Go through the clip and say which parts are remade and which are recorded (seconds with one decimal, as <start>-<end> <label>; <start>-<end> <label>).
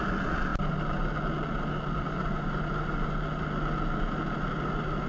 0.0-5.1 recorded